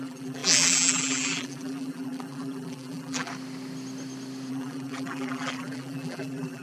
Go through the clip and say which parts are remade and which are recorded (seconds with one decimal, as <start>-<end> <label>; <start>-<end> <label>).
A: 0.0-3.3 remade; 3.3-4.5 recorded; 4.5-6.6 remade